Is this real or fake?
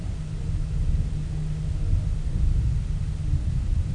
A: real